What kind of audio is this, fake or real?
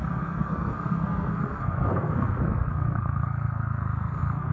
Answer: fake